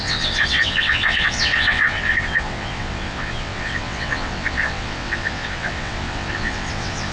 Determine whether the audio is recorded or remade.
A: remade